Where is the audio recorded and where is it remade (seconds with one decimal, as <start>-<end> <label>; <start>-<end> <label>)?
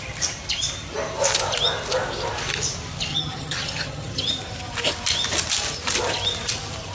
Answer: 0.0-3.1 recorded; 3.1-4.2 remade; 4.2-6.9 recorded